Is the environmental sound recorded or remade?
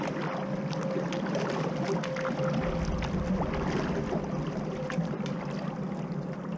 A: recorded